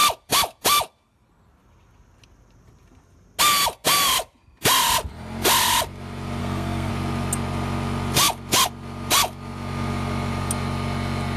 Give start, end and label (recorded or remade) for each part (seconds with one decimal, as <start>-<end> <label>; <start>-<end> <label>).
0.0-6.4 recorded; 6.4-6.9 remade; 6.9-11.4 recorded